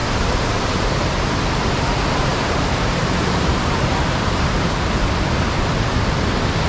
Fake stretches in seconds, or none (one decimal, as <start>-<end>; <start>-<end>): 0.0-1.1; 2.3-4.9